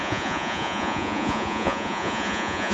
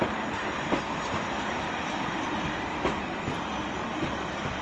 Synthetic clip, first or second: first